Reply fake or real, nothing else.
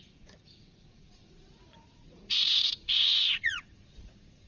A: fake